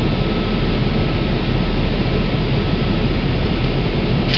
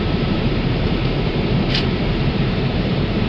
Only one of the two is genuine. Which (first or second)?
first